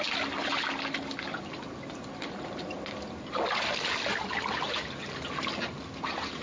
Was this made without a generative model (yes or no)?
yes